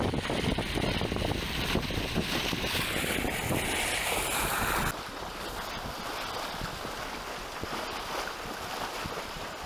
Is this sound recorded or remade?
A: recorded